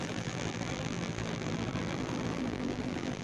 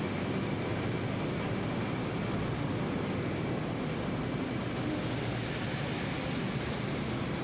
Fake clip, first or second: first